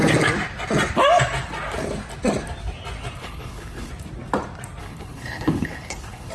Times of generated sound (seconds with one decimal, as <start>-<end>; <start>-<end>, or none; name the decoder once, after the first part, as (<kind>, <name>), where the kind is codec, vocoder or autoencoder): 3.2-3.9 (codec, HILCodec); 4.8-6.3